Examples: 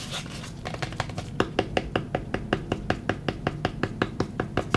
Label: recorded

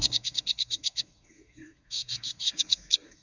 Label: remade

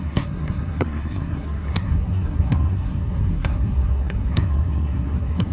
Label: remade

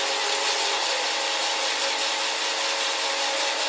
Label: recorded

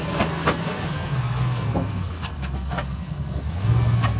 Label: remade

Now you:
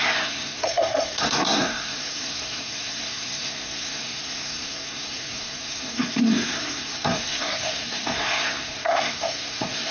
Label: remade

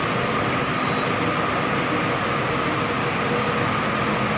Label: recorded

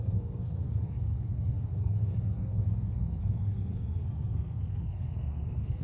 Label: remade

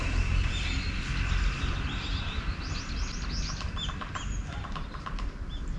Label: recorded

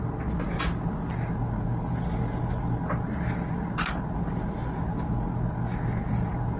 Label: recorded